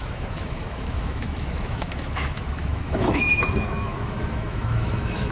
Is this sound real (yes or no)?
no